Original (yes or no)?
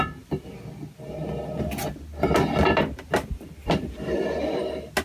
yes